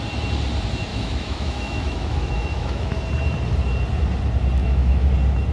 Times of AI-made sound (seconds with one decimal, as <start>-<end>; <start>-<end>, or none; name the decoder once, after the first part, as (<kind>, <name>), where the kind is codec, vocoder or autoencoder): 0.9-3.0 (autoencoder, DAC-VAE); 4.6-5.1